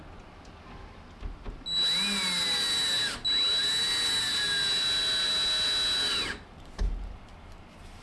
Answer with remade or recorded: recorded